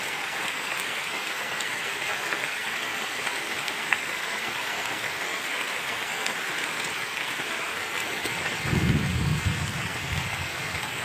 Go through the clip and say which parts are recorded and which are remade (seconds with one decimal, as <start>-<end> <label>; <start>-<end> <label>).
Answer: 0.0-11.0 remade